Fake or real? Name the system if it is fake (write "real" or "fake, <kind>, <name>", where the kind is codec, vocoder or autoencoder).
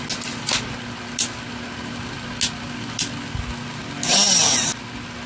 real